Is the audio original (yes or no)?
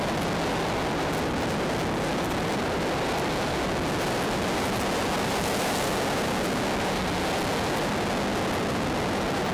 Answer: yes